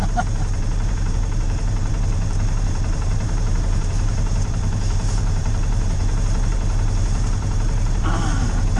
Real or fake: fake